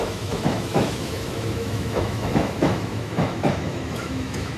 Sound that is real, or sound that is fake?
fake